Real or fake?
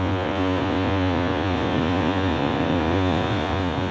fake